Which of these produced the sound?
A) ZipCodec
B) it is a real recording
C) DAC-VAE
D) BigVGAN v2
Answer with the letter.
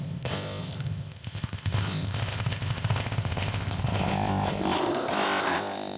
A